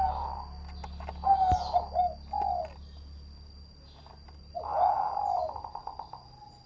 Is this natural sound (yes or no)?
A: yes